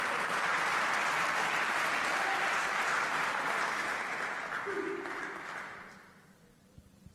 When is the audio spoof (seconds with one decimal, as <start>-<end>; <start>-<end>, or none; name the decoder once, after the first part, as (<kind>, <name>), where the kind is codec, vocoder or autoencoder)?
none